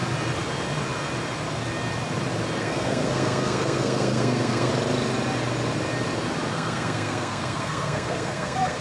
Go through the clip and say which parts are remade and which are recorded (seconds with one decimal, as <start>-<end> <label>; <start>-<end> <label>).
0.0-2.6 recorded; 2.6-4.7 remade; 4.7-6.5 recorded; 6.5-8.8 remade